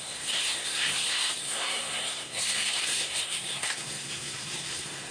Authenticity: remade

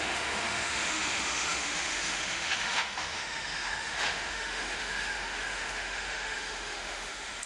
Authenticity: remade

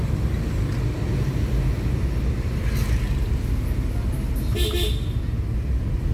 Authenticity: recorded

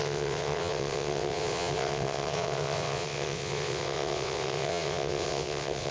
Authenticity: remade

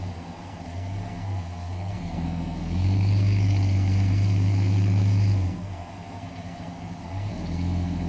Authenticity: remade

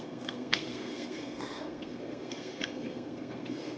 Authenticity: remade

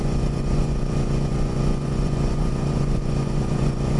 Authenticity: remade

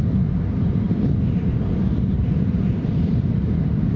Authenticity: remade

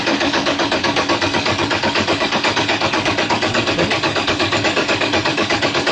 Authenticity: remade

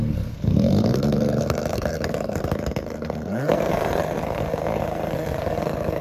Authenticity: remade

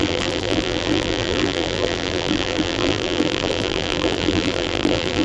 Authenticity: remade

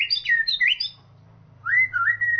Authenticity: remade